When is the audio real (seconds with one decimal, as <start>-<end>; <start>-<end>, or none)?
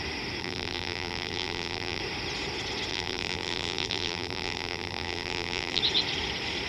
0.0-0.4; 2.0-2.9; 5.8-6.7